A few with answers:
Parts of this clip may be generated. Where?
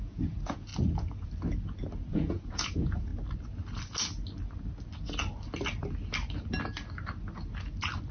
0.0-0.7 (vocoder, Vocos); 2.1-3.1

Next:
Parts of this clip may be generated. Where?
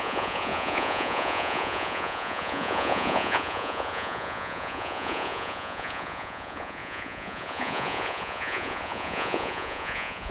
0.0-10.3 (vocoder, Vocos)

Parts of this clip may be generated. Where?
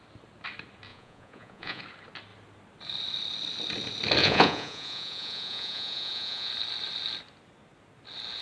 0.9-1.8 (vocoder, Vocos); 4.2-6.5